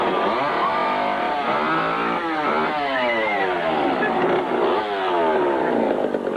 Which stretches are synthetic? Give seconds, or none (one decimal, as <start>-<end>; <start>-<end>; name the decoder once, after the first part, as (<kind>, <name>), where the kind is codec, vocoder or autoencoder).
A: none